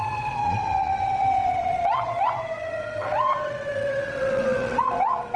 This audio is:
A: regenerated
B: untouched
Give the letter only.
A